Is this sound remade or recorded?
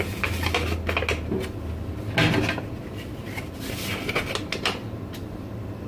recorded